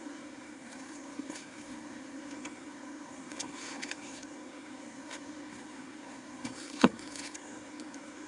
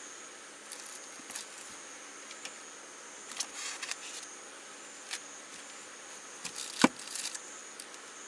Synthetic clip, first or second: first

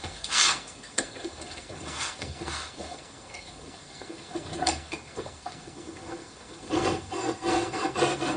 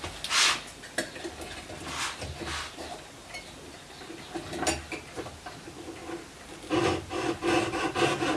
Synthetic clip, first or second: first